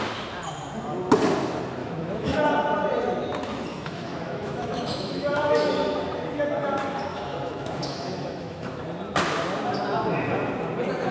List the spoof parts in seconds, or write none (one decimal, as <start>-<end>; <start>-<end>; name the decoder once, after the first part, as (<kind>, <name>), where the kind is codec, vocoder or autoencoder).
1.8-2.5 (autoencoder, DAC-VAE); 3.7-5.7; 7.1-8.8